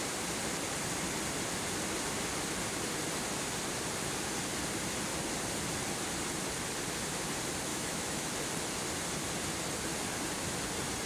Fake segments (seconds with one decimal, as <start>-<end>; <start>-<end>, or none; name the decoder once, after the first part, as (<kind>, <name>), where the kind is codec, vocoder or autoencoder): 7.7-8.3 (autoencoder, DAC-VAE)